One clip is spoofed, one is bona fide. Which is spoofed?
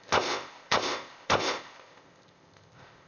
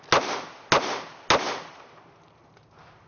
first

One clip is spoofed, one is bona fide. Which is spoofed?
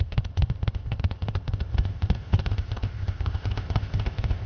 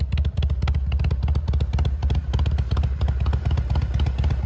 first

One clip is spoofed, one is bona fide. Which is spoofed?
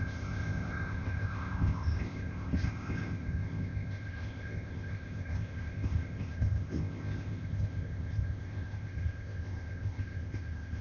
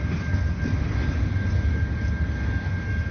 first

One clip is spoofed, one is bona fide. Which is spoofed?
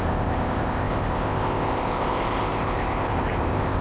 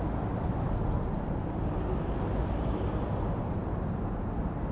first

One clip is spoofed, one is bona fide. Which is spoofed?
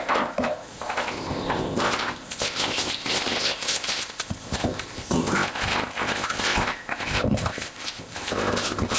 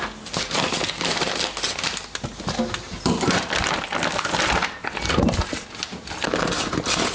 first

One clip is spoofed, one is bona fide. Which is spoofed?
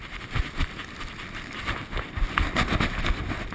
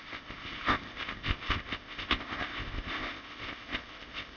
second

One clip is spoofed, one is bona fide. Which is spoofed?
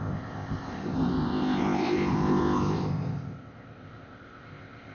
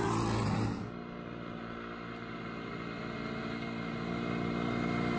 first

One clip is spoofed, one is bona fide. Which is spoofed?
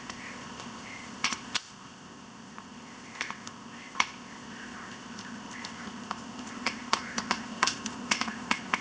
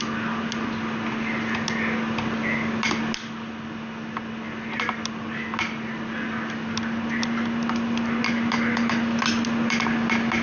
first